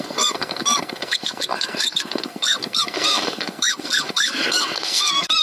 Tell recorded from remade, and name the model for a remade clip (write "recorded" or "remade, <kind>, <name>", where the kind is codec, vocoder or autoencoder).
remade, codec, SNAC